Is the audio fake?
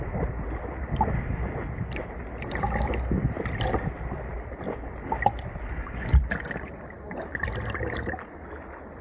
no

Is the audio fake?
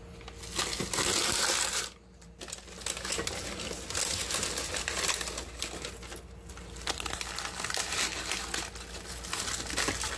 no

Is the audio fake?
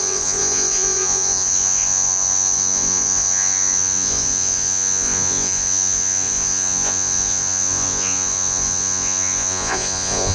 yes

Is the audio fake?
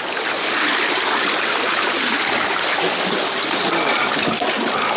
no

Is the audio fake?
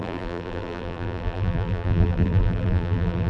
yes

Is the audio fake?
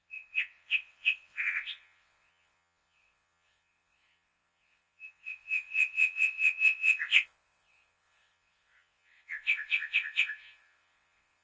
yes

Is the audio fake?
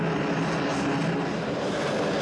no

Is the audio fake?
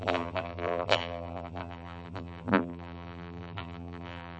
yes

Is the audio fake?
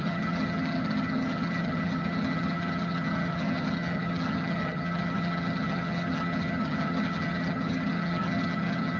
yes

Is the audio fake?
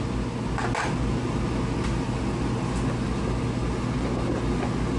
no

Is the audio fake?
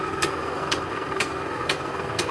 yes